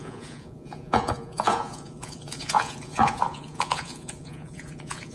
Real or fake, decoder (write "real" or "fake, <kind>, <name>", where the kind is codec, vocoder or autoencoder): fake, vocoder, Vocos